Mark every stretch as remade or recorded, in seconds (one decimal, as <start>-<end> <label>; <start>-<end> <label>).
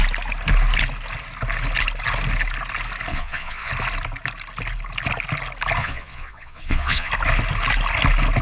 0.0-3.1 recorded; 3.1-3.7 remade; 3.7-5.8 recorded; 5.8-7.1 remade; 7.1-8.4 recorded